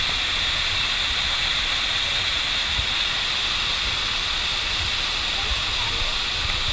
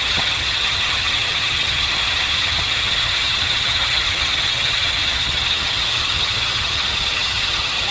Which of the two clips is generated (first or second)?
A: second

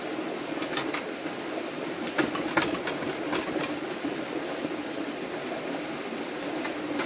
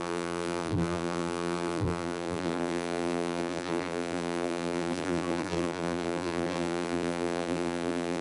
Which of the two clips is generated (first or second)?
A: second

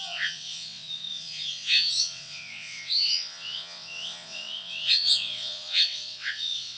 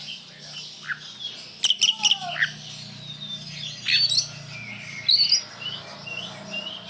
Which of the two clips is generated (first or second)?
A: first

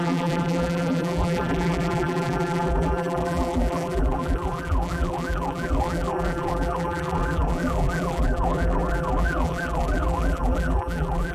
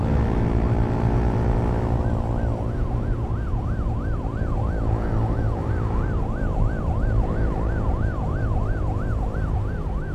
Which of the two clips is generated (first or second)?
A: first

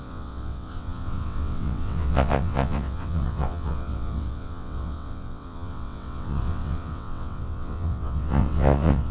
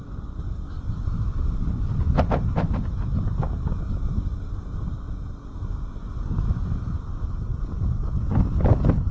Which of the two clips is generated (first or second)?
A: first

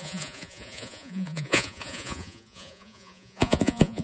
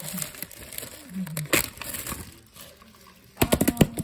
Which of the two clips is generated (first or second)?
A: first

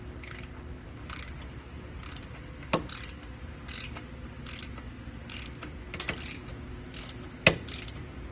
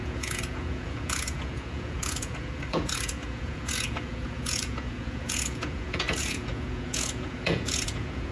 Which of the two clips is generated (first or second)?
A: second